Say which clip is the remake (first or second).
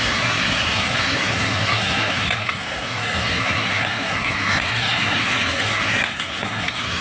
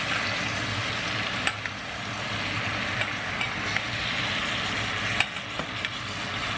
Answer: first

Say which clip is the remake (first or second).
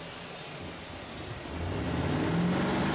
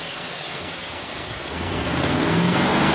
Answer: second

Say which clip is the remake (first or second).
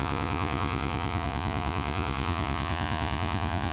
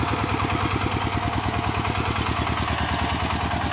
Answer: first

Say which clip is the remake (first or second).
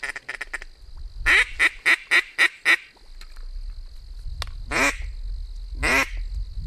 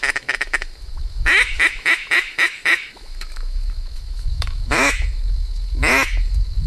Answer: second